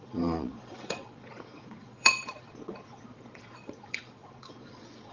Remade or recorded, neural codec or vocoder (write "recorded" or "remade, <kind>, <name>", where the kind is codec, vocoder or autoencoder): remade, vocoder, Vocos